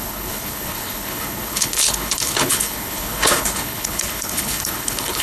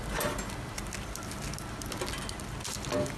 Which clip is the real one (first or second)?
second